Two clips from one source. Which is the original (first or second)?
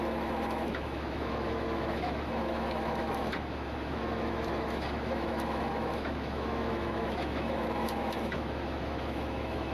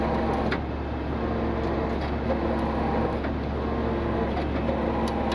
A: second